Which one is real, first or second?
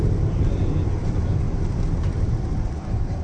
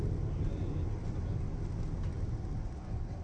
second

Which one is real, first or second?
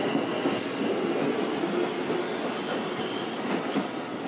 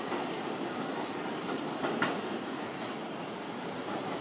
first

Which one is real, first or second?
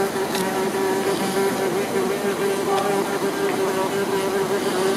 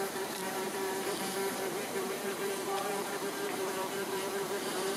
first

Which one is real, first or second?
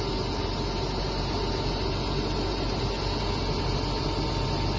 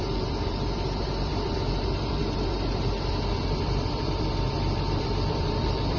first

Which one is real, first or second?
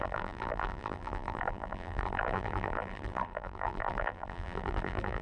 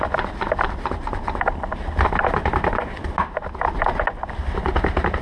second